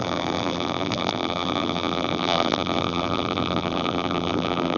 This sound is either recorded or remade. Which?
remade